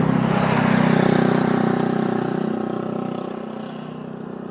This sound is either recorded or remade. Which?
recorded